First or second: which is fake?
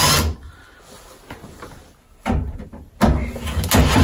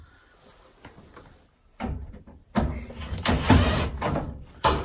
second